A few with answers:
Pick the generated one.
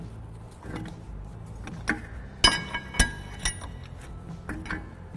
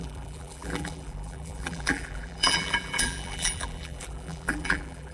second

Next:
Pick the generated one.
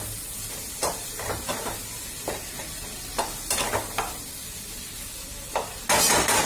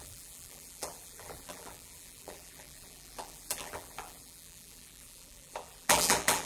second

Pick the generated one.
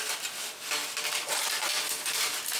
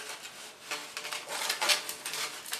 first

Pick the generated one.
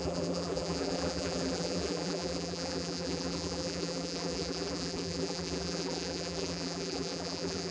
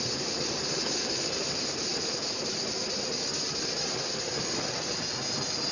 first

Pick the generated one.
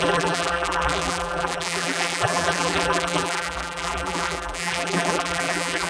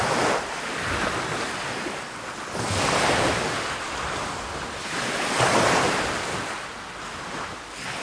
first